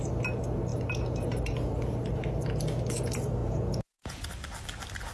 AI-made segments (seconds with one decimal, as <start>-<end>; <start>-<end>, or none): 3.4-4.3